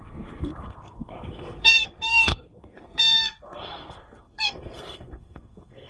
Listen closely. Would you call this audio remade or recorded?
remade